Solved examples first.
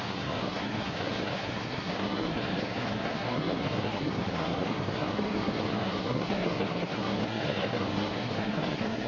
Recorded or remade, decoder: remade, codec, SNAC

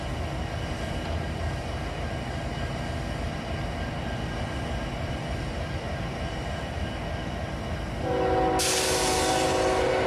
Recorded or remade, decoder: recorded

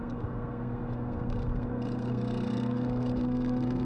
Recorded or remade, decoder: remade, codec, SNAC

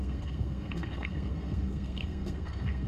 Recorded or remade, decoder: remade, codec, SNAC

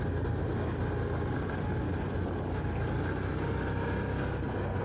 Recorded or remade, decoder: recorded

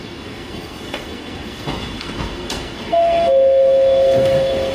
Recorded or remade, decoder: remade, codec, SNAC